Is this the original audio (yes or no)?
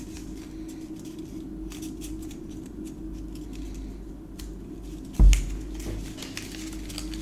yes